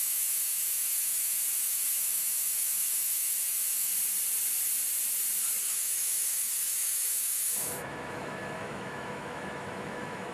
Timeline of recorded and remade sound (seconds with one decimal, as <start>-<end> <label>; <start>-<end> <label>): 0.0-3.9 remade; 3.9-5.6 recorded; 5.6-10.3 remade